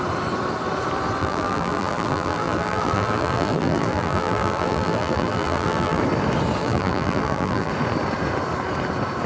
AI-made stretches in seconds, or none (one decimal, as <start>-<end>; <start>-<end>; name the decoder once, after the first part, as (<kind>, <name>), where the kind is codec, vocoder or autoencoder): 1.2-6.0 (vocoder, BigVGAN v2); 6.6-7.7